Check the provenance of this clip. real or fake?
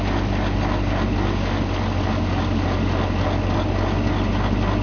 real